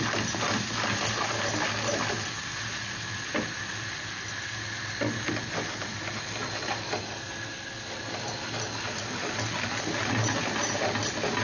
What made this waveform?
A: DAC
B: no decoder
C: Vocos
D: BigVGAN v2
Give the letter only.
B